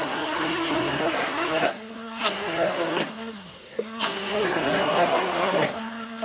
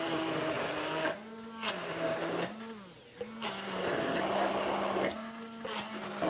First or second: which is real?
second